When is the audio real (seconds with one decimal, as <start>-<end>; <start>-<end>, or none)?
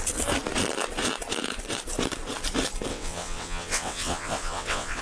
0.0-2.9